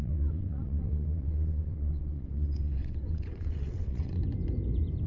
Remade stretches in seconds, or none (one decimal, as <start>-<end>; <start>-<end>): 0.0-4.2